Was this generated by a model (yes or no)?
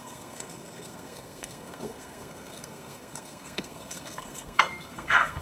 yes